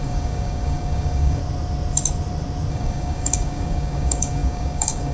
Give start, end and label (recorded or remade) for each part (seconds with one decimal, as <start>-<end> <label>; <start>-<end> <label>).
0.0-1.4 remade; 1.4-2.7 recorded; 2.7-5.1 remade